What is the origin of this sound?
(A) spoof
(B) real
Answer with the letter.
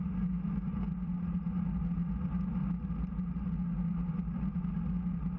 B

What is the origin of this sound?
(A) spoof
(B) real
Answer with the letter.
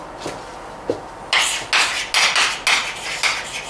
B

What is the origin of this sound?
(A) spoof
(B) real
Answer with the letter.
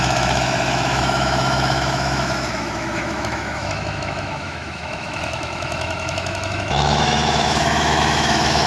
A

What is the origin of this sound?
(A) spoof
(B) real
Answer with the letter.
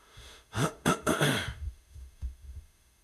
A